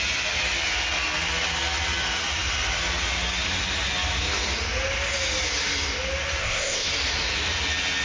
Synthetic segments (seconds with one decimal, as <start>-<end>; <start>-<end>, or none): 6.4-6.9